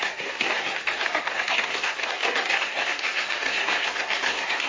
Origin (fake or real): fake